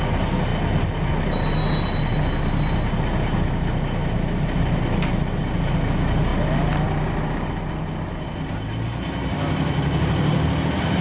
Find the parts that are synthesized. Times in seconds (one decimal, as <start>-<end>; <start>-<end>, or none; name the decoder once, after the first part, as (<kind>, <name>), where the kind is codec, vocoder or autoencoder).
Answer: none